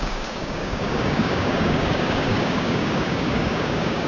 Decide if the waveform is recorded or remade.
remade